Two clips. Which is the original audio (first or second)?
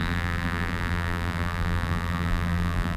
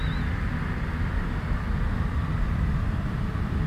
second